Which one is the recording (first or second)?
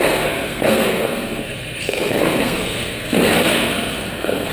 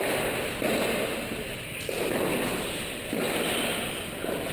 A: second